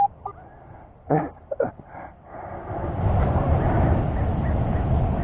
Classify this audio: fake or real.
real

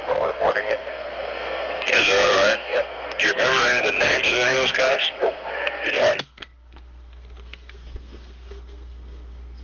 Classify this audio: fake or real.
fake